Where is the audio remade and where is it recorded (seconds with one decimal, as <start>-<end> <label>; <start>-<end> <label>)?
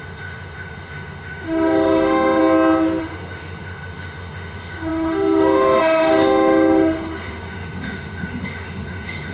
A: 0.0-2.4 remade; 2.4-3.0 recorded; 3.0-9.3 remade